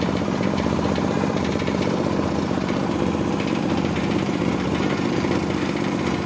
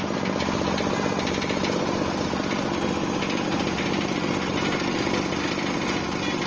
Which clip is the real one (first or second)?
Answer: second